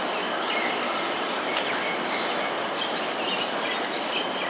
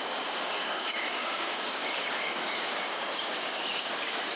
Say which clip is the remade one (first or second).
second